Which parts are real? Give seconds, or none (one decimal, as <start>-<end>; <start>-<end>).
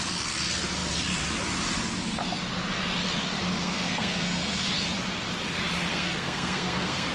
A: 0.0-3.6; 4.7-5.9